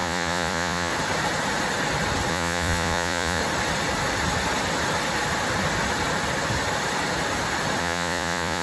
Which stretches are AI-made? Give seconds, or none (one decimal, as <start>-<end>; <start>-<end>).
0.0-0.9; 2.3-3.4; 7.8-8.6